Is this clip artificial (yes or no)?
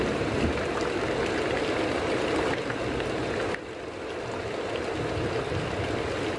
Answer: no